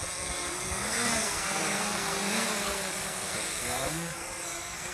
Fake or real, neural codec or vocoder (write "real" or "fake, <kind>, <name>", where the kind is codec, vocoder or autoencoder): fake, codec, SNAC